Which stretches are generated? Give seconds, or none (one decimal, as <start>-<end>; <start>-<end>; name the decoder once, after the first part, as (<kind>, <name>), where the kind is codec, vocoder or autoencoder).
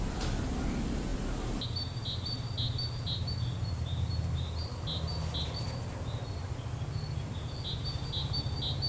none